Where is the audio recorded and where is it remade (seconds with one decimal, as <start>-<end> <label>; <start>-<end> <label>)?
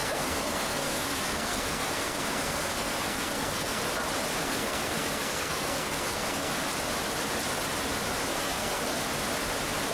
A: 0.0-3.8 remade; 3.8-4.4 recorded; 4.4-6.5 remade; 6.5-8.3 recorded; 8.3-8.8 remade; 8.8-9.9 recorded